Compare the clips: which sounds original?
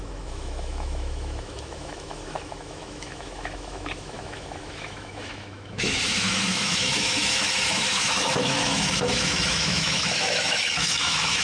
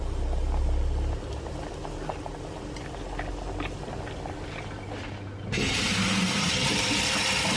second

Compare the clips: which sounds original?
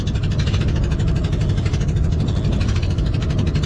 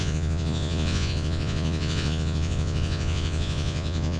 first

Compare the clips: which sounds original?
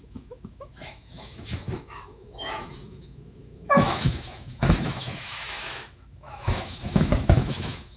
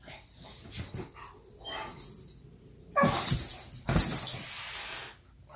second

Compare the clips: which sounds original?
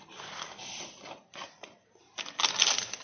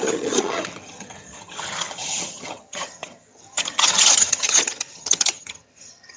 first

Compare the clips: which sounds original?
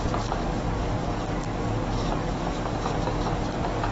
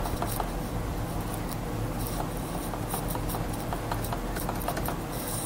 second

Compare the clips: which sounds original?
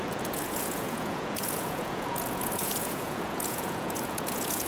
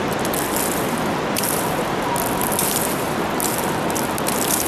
second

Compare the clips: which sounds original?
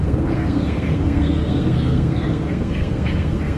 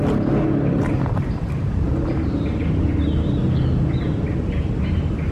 second